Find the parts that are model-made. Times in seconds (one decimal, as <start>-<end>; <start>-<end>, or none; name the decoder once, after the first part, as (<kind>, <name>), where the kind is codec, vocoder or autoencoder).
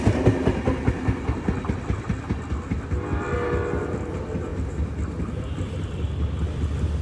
none